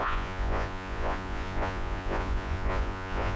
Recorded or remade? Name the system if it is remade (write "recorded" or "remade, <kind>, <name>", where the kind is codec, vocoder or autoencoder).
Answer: remade, vocoder, Vocos